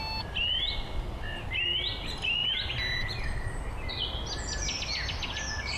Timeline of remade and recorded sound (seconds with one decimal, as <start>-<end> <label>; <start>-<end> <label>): 0.0-5.8 recorded